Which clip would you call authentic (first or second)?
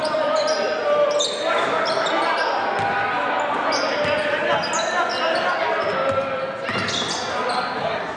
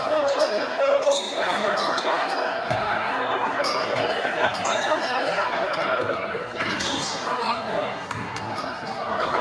first